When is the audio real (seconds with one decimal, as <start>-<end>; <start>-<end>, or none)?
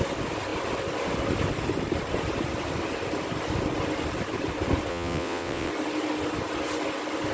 0.0-4.9; 5.7-7.3